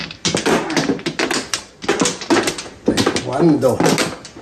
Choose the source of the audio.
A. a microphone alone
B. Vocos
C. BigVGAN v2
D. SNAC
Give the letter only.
A